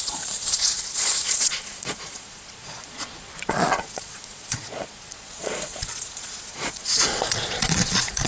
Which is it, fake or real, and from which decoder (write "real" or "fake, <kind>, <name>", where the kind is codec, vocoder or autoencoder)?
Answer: fake, vocoder, Vocos